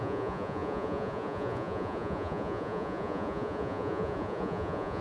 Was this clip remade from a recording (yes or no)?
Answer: yes